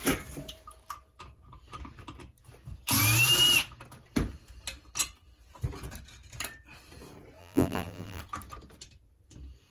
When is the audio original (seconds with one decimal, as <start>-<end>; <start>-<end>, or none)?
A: 0.0-7.4; 8.2-9.7